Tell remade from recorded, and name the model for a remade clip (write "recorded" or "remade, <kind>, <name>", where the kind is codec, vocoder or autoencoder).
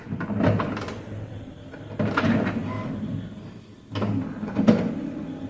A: recorded